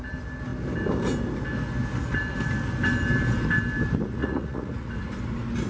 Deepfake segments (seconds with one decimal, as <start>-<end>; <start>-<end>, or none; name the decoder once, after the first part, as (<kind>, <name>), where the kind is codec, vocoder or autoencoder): 4.2-4.9 (vocoder, Vocos)